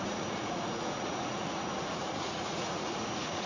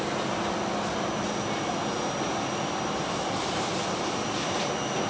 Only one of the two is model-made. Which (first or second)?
first